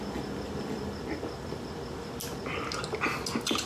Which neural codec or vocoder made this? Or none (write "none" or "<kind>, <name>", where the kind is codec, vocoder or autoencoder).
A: none